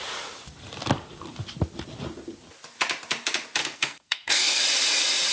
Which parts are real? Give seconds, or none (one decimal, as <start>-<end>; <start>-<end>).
0.0-3.6; 4.6-5.3